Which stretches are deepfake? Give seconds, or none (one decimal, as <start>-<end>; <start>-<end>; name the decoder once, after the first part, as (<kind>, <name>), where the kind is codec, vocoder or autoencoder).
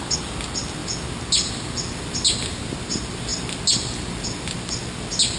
none